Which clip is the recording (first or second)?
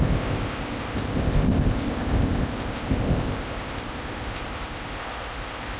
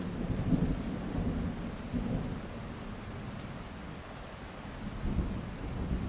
second